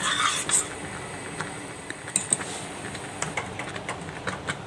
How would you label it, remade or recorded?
recorded